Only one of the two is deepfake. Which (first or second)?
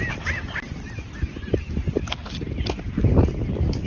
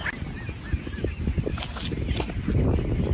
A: first